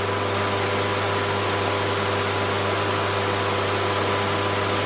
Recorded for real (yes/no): yes